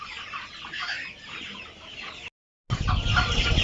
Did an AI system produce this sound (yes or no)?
no